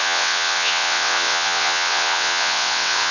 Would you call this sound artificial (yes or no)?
yes